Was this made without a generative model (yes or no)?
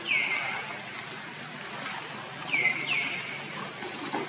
yes